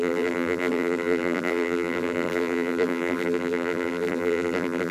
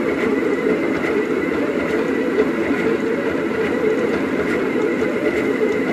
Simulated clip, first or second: first